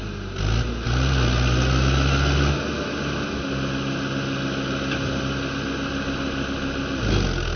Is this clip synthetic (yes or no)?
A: no